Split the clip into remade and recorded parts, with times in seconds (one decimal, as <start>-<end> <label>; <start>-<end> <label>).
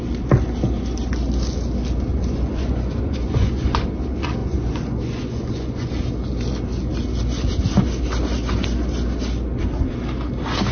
0.0-2.1 recorded; 2.1-3.8 remade; 3.8-4.4 recorded; 4.4-5.9 remade; 5.9-10.7 recorded